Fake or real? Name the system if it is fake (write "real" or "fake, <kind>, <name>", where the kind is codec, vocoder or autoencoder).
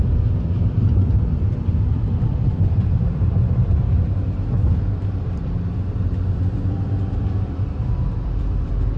fake, vocoder, BigVGAN v2